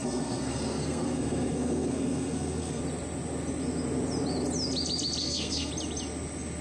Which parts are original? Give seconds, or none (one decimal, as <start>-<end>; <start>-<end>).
2.8-5.2; 5.7-6.6